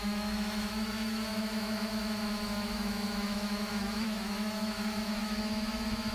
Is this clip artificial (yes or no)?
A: yes